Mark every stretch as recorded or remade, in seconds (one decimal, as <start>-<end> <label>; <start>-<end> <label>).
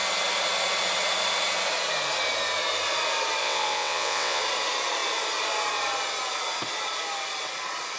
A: 0.0-3.4 recorded; 3.4-4.4 remade; 4.4-8.0 recorded